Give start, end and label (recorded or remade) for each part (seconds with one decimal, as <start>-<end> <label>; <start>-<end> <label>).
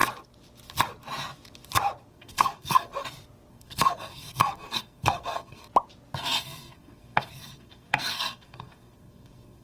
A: 0.0-2.1 recorded; 2.1-2.9 remade; 2.9-3.5 recorded; 3.5-5.6 remade; 5.6-6.2 recorded; 6.2-9.6 remade